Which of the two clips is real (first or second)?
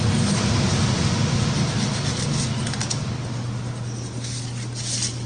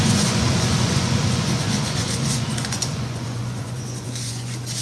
first